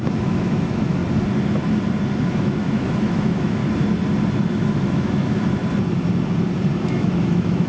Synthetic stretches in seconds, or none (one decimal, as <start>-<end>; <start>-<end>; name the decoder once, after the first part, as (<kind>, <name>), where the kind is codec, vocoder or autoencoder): 0.0-1.0 (autoencoder, DAC-VAE); 2.2-3.6; 4.5-5.6; 6.8-7.7